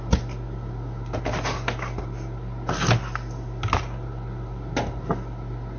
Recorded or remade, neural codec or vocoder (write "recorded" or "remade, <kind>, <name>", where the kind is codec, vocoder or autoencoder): recorded